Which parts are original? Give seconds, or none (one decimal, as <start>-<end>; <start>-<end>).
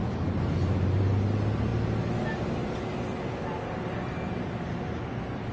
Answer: 0.0-5.5